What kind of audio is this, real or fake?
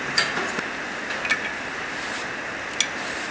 real